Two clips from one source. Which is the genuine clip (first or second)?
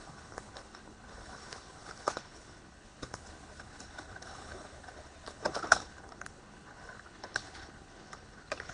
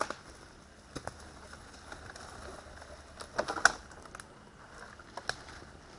second